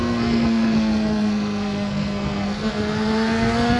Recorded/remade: remade